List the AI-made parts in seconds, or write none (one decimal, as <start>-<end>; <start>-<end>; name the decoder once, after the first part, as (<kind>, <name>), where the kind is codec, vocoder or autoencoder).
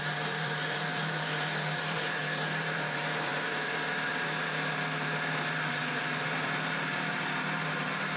0.0-8.2 (vocoder, BigVGAN v2)